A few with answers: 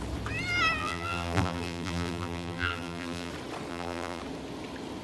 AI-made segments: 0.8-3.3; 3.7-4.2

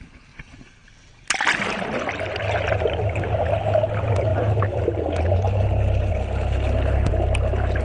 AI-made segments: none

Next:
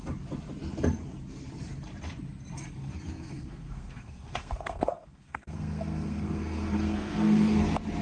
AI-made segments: 2.8-7.6